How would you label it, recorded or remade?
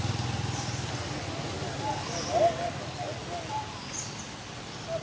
recorded